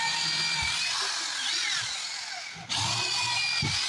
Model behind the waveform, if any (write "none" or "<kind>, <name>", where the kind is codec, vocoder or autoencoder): none